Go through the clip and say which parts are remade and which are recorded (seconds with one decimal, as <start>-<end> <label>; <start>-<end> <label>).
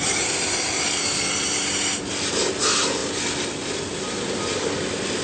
0.0-5.2 recorded